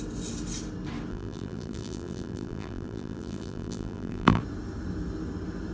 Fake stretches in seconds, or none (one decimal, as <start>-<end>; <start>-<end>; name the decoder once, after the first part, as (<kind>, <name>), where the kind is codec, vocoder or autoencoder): 1.1-4.4 (vocoder, BigVGAN v2)

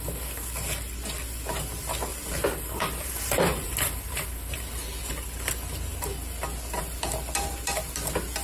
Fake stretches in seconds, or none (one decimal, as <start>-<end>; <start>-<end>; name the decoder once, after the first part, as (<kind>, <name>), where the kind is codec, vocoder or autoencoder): 2.1-5.0 (vocoder, BigVGAN v2)